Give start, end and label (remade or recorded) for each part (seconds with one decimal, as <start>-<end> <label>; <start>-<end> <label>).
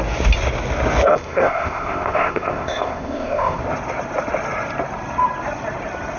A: 0.0-1.1 recorded; 1.1-3.6 remade; 3.6-6.2 recorded